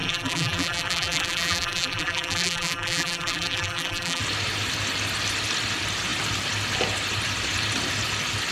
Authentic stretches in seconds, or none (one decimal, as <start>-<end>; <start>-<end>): 4.2-8.5